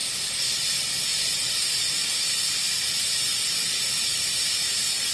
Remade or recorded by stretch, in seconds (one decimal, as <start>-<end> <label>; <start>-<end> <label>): 0.0-5.1 recorded